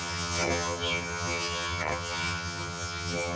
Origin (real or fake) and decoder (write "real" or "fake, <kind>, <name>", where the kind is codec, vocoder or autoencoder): fake, vocoder, HiFi-GAN